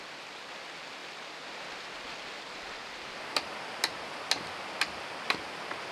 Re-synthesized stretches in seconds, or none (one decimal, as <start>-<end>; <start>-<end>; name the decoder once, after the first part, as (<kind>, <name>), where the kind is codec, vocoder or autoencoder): none